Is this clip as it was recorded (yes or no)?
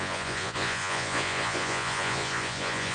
no